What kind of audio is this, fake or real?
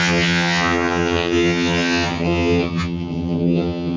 fake